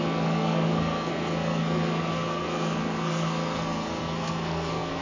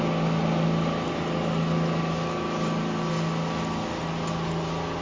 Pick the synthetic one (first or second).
first